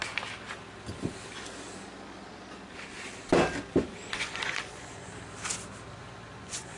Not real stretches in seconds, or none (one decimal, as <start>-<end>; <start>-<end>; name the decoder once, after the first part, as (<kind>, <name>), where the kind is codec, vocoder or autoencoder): 4.1-5.1 (vocoder, Vocos); 5.9-6.8